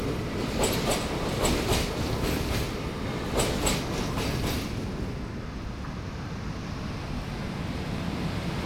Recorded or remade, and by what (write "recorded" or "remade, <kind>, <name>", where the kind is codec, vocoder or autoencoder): recorded